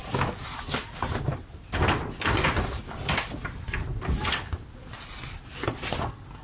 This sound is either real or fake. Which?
real